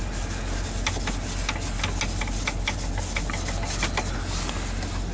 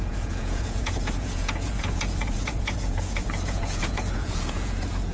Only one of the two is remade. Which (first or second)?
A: second